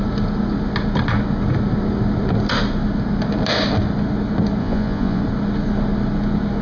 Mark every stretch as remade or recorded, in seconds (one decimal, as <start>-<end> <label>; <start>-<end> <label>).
0.0-4.6 recorded; 4.6-5.2 remade; 5.2-6.6 recorded

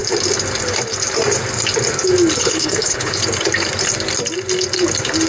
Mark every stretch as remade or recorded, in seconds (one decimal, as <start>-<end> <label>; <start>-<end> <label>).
0.0-2.4 recorded; 2.4-3.2 remade; 3.2-5.3 recorded

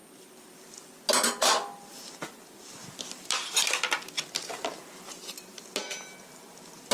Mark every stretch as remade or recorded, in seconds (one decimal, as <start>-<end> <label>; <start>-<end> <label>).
0.0-6.9 recorded

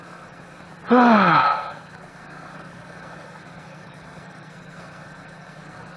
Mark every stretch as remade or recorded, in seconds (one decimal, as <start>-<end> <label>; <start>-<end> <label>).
0.0-0.7 remade; 0.7-1.3 recorded; 1.3-6.0 remade

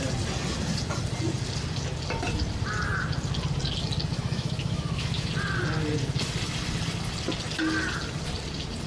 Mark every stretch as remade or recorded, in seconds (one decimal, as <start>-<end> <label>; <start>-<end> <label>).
0.0-4.1 recorded; 4.1-5.3 remade; 5.3-8.9 recorded

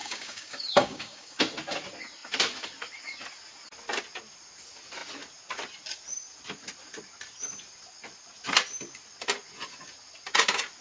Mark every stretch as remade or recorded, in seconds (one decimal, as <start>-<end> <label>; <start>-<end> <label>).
0.0-1.4 remade; 1.4-10.8 recorded